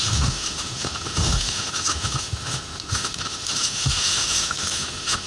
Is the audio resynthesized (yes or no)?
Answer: yes